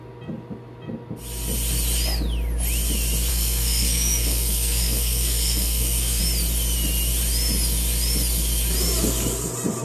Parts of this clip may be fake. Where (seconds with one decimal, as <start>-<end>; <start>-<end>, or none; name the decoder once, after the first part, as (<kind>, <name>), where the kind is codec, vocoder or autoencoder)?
3.3-6.2 (codec, SNAC)